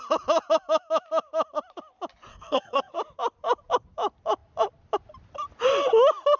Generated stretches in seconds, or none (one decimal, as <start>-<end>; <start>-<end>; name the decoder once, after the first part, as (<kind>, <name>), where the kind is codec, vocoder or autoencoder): 2.3-2.9 (codec, SNAC)